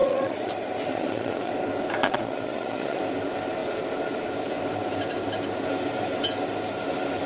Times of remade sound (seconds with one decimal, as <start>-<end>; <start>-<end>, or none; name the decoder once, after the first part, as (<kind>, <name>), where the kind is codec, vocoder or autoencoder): 0.0-0.5 (vocoder, Vocos); 0.9-1.5; 2.0-3.0